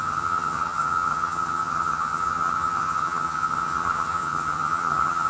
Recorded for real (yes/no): no